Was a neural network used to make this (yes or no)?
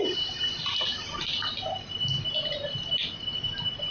no